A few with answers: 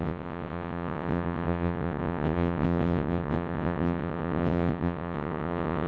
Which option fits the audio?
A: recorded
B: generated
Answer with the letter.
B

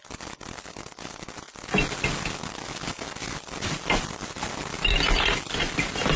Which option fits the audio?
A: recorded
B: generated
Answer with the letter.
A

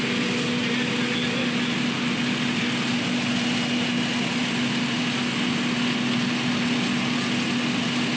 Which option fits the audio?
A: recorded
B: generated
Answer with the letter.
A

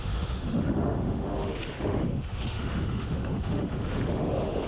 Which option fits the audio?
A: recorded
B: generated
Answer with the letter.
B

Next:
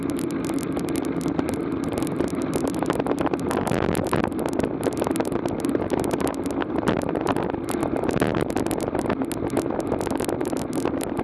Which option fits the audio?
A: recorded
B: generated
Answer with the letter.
A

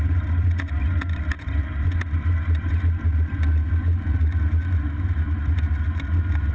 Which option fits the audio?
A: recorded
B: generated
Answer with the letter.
A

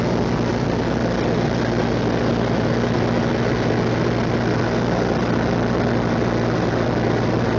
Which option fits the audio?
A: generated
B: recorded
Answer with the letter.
B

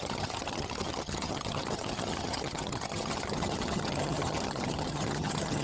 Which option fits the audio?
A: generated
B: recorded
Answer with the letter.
A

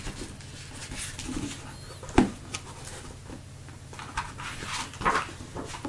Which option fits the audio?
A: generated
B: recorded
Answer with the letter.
B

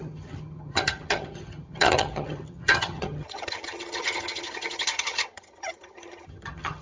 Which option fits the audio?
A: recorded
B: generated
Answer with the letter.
B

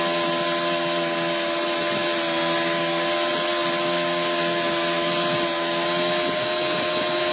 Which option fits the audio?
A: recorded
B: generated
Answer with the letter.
A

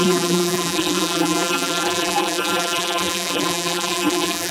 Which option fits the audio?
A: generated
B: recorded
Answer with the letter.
A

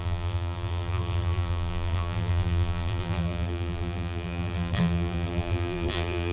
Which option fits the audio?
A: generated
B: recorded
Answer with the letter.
A